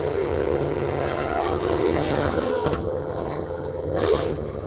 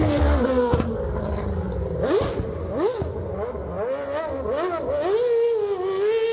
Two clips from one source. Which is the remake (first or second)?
first